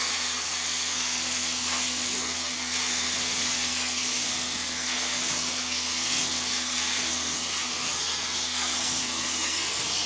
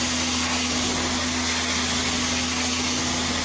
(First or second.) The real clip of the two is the second